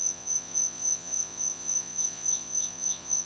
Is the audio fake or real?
fake